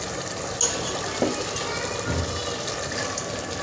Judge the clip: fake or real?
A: real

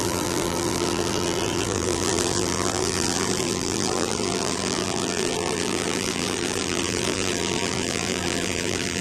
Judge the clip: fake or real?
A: fake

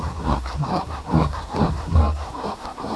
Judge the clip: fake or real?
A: fake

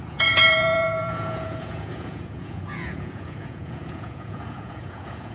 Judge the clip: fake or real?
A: fake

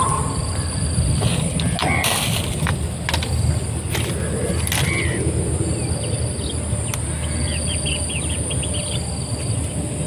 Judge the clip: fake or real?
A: real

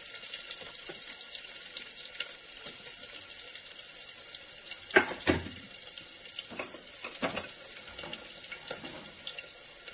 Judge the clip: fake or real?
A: real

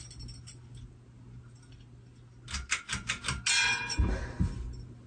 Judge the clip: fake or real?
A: real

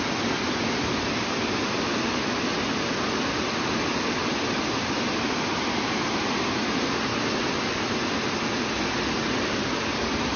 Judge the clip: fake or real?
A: real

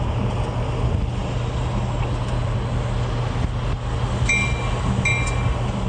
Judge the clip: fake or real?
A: real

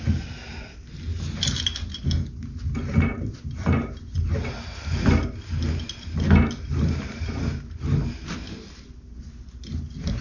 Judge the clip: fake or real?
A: real